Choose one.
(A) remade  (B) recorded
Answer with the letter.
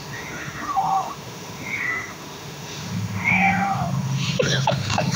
A